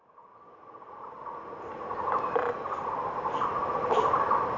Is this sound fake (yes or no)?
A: no